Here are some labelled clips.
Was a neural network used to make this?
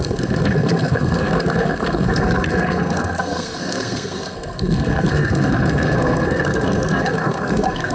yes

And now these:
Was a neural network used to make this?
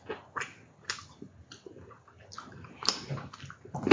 no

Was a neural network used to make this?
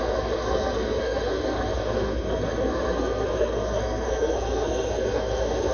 yes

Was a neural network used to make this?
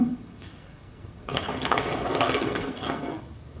yes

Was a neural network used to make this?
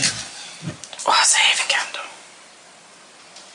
no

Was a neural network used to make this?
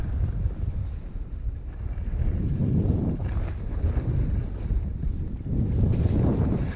no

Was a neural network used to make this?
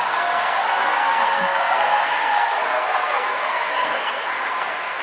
yes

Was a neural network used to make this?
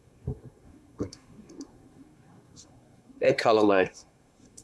yes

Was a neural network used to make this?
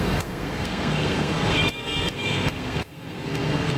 yes